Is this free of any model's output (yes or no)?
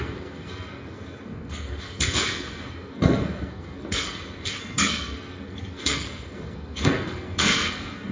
no